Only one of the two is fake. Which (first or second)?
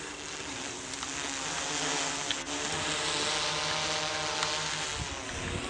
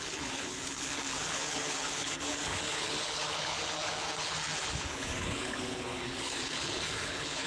second